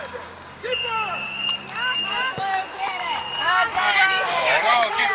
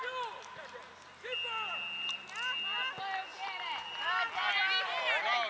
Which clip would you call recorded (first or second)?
second